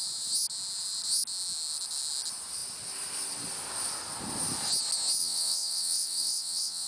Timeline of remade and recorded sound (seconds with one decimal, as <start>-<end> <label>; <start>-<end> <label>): 0.0-5.2 recorded; 5.2-6.9 remade